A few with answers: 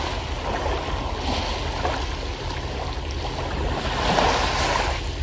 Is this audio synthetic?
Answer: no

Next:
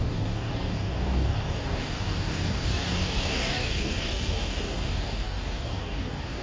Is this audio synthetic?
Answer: yes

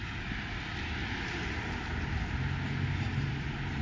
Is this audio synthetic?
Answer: no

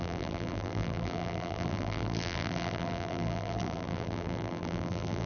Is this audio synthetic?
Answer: yes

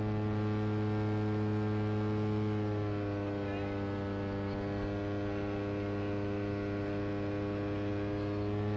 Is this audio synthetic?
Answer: no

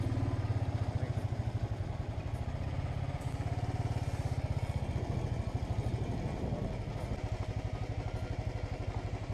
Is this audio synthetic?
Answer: no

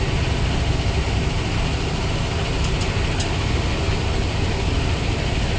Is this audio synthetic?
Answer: no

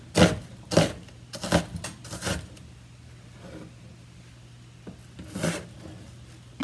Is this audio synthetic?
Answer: no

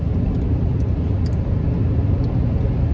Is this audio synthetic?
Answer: no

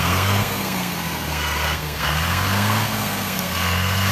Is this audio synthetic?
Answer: yes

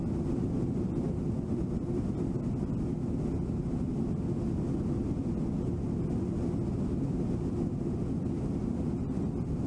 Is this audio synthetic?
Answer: no